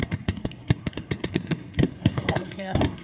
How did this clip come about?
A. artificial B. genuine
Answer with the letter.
A